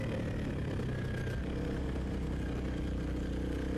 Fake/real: real